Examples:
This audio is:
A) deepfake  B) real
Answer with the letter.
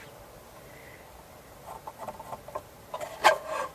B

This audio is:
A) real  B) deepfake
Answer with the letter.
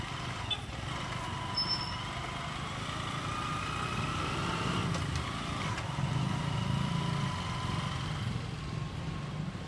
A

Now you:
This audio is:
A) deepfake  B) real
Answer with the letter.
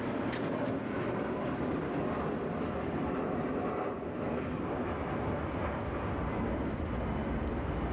B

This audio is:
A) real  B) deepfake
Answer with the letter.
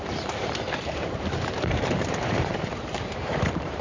B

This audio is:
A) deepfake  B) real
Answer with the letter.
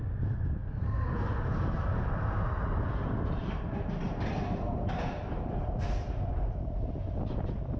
B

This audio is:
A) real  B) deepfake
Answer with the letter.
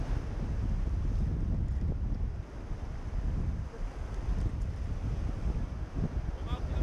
A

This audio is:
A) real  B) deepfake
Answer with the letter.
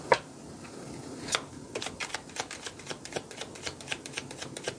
A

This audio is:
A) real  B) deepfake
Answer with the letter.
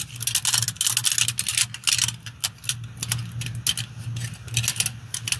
A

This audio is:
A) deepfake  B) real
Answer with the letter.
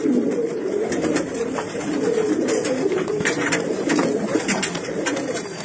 A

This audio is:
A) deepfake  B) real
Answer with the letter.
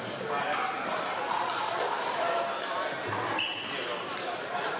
B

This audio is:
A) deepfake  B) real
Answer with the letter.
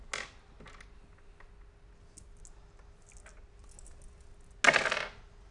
B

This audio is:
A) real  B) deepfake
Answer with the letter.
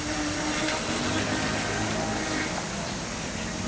A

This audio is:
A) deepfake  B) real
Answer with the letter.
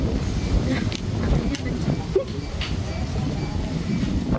B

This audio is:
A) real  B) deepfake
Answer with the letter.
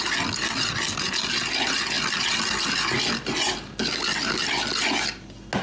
A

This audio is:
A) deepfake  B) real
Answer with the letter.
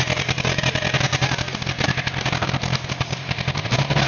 B